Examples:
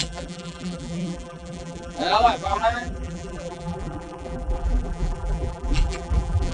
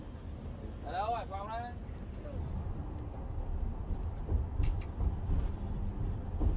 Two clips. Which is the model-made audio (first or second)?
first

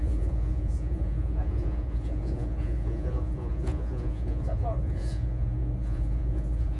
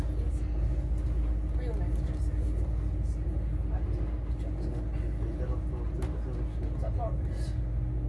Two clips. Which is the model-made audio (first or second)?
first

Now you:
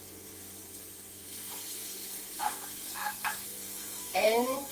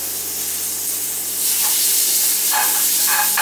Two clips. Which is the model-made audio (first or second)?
first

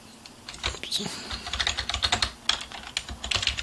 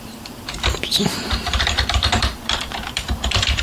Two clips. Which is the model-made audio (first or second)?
second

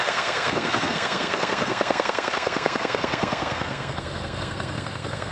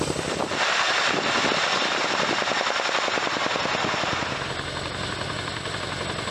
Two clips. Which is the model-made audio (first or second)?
first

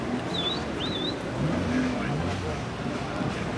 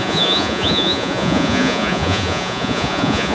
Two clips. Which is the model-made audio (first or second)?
second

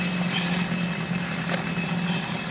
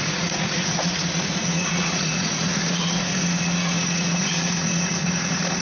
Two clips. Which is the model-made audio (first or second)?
second